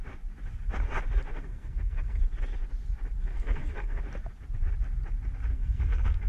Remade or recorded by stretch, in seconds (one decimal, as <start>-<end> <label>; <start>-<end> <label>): 0.0-1.3 recorded; 1.3-2.2 remade; 2.2-3.3 recorded; 3.3-4.0 remade; 4.0-5.5 recorded; 5.5-6.3 remade